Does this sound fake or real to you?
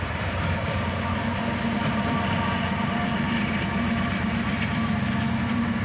fake